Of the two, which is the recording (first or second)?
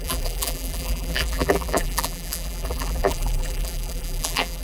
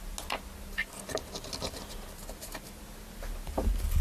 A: second